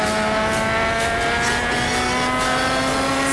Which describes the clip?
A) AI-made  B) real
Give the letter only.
B